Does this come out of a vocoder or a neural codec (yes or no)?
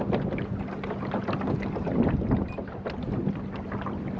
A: no